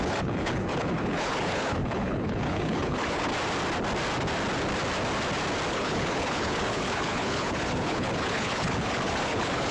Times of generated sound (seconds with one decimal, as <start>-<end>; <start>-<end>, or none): 0.0-3.3; 5.7-9.7